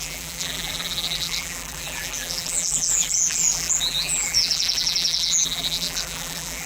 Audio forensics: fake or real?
fake